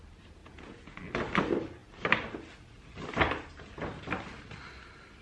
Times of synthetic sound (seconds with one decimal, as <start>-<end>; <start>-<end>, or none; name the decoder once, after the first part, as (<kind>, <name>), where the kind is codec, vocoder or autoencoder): 0.4-1.0 (vocoder, Vocos)